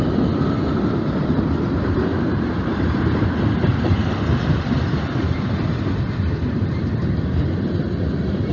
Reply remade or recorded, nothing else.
remade